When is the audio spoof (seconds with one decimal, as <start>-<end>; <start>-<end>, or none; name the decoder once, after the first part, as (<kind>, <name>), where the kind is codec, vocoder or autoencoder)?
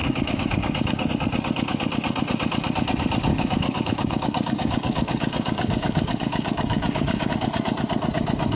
0.0-1.1 (codec, DAC); 3.3-7.3